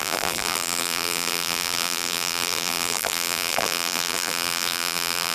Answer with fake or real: fake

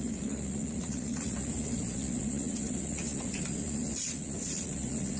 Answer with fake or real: fake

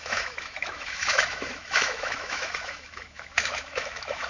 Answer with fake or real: fake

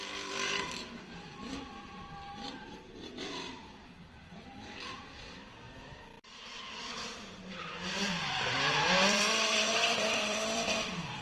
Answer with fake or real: fake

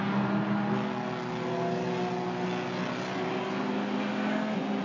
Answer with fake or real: real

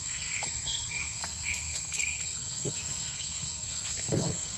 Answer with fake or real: fake